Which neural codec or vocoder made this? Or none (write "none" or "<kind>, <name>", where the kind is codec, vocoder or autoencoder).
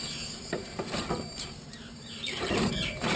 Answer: vocoder, BigVGAN v2